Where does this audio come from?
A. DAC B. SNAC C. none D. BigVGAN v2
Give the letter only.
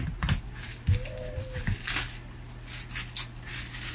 C